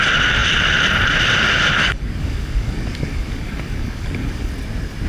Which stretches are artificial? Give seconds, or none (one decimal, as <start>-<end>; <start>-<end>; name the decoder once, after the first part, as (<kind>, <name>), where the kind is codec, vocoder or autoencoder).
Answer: 1.8-4.5 (codec, DAC)